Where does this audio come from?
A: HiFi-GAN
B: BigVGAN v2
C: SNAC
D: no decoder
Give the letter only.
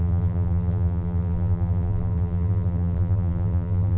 B